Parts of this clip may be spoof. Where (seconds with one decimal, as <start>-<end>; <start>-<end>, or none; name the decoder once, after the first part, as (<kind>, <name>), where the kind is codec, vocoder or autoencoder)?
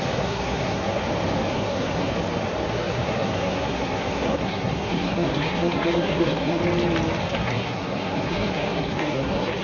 0.0-1.0 (codec, SNAC); 1.5-2.1; 2.7-6.6; 7.2-9.6